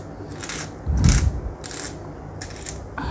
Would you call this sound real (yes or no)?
yes